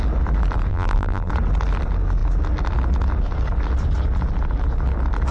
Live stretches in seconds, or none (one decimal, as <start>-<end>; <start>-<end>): 0.0-0.7; 1.3-5.3